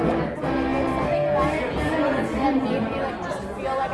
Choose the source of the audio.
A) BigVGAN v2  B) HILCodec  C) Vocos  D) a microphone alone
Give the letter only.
D